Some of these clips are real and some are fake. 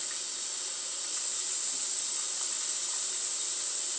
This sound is real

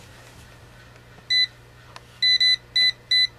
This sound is real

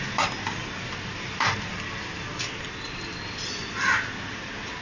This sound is real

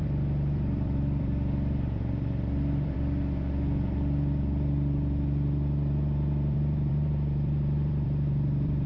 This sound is fake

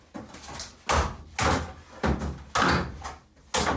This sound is real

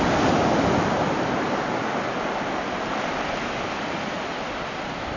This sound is real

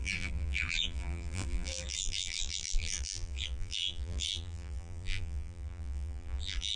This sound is fake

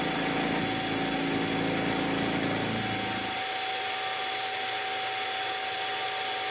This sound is real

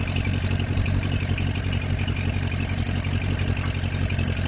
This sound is real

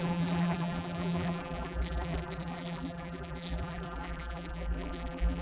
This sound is fake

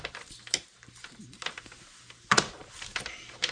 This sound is fake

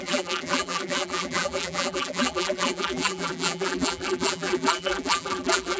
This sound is fake